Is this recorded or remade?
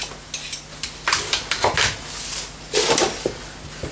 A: recorded